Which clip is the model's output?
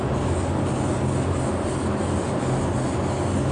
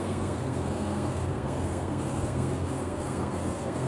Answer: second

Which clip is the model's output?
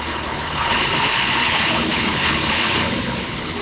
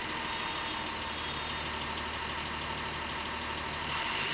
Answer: first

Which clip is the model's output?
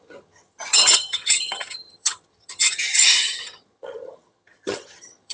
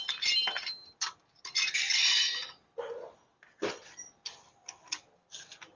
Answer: first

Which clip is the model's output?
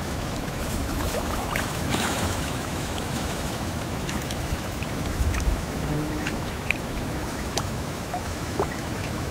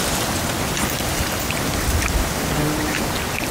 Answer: first